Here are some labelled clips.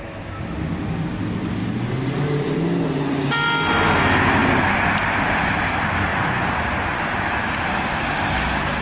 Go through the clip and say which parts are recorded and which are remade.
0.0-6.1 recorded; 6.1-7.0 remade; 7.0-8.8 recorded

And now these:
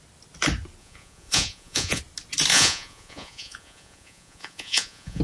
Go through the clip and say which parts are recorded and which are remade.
0.0-0.8 recorded; 0.8-2.0 remade; 2.0-2.5 recorded; 2.5-5.2 remade